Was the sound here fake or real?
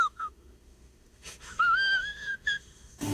fake